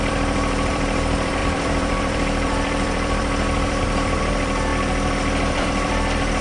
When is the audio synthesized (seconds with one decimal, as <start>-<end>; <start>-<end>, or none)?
0.0-6.4